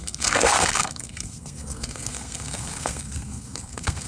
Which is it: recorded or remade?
remade